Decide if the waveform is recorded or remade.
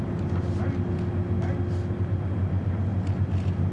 recorded